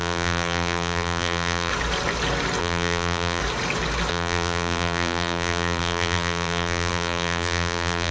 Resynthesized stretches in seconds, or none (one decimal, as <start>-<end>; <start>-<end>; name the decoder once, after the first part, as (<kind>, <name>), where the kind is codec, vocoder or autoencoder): 0.0-1.7 (vocoder, BigVGAN v2); 2.6-3.4; 4.1-8.1